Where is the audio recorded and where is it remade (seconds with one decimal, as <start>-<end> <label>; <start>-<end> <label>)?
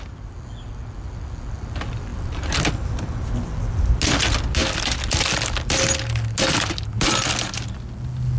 0.0-8.4 recorded